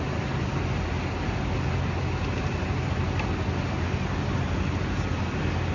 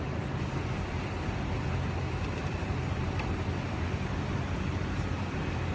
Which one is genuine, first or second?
first